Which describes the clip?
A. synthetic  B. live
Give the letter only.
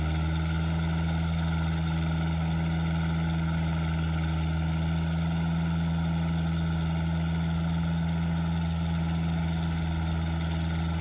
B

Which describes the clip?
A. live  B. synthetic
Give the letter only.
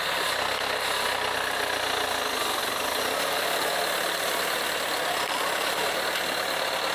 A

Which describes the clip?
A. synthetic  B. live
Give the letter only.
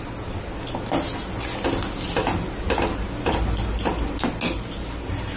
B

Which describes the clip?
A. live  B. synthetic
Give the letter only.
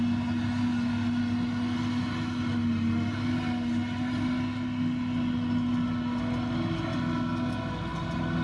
A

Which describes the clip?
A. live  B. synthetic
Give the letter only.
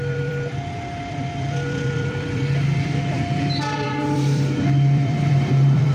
B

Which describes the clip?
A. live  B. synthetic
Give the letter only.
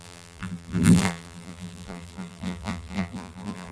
B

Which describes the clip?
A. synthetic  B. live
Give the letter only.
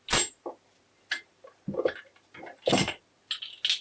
B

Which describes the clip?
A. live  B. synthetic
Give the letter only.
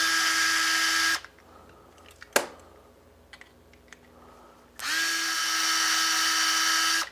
A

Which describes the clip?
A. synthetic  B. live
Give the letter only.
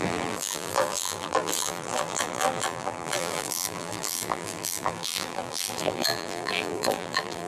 A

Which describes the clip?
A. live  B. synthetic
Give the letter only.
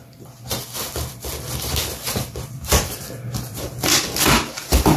B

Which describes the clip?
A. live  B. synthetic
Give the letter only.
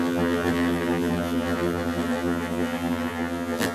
B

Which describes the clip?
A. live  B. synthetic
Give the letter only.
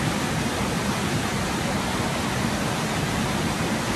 B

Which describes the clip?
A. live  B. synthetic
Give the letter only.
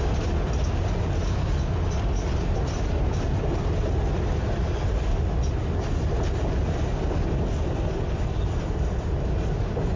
A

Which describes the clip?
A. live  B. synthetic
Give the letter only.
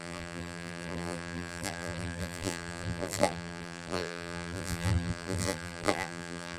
B